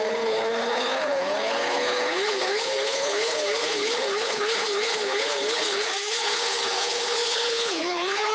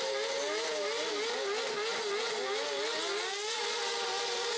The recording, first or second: second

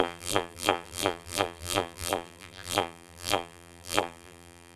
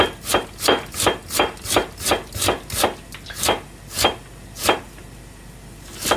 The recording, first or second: second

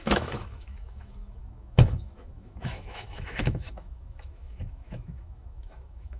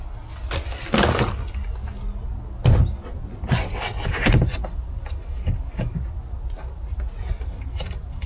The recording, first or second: second